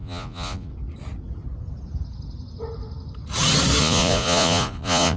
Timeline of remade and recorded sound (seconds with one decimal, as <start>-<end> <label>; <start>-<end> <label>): 0.0-0.7 remade; 0.7-3.8 recorded; 3.8-5.2 remade